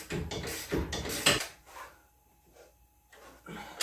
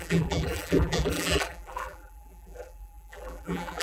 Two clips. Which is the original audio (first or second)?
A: first